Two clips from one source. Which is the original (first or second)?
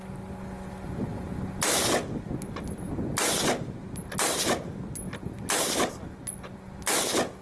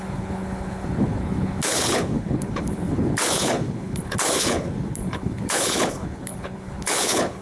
first